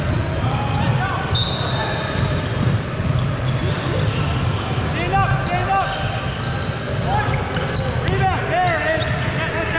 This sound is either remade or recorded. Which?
recorded